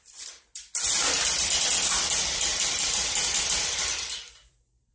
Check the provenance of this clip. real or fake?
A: fake